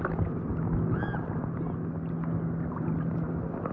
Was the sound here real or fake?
real